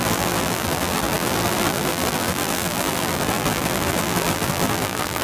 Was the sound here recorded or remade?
remade